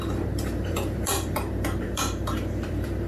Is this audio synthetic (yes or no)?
yes